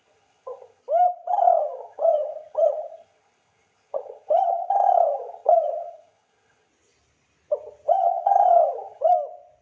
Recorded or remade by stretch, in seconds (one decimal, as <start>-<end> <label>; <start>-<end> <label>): 0.0-0.8 remade; 0.8-1.4 recorded; 1.4-6.7 remade; 6.7-7.9 recorded; 7.9-9.0 remade; 9.0-9.6 recorded